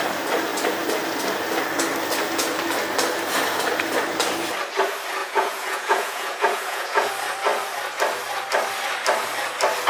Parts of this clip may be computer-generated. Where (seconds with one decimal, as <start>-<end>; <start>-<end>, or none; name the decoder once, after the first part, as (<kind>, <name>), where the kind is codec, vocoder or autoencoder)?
5.2-7.1 (vocoder, Vocos)